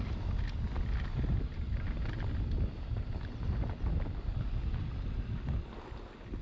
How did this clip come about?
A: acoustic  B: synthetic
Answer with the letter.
A